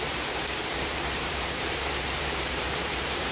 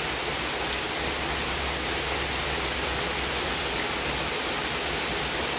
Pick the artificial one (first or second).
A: first